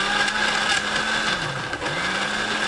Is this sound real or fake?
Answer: real